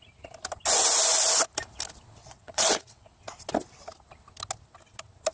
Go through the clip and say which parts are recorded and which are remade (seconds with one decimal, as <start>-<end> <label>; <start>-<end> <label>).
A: 0.0-2.2 recorded; 2.2-3.1 remade; 3.1-5.3 recorded